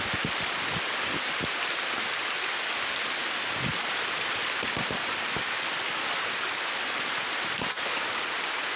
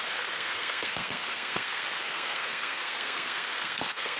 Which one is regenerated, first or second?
second